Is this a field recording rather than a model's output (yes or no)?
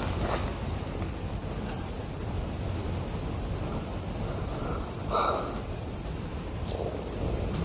yes